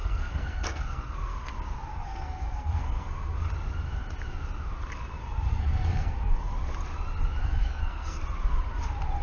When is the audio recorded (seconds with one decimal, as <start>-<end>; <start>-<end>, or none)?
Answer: 1.5-1.9; 3.5-5.5; 6.5-7.4; 8.2-9.2